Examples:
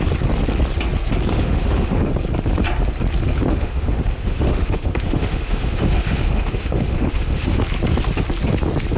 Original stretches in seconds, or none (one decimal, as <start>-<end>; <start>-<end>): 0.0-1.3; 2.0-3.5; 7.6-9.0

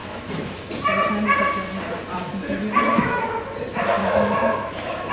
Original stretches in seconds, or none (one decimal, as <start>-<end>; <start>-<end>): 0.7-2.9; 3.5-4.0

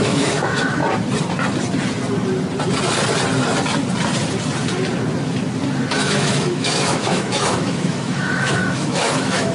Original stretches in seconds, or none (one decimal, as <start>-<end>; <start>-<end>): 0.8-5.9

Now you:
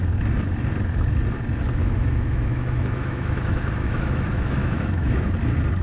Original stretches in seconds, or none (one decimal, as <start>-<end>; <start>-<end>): 0.0-1.8; 5.3-5.8